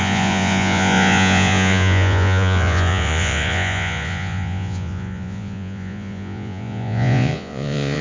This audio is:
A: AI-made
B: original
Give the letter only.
A